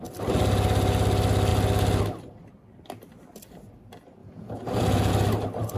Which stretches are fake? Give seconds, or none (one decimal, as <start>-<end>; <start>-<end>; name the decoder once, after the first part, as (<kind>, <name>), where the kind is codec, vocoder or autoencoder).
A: 4.2-5.1 (vocoder, Vocos)